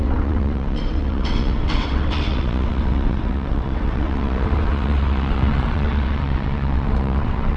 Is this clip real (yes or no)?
no